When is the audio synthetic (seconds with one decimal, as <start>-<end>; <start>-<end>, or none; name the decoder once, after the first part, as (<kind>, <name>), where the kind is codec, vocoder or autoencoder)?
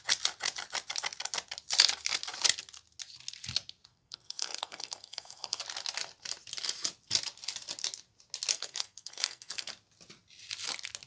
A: 3.9-5.6 (codec, SNAC); 8.5-9.7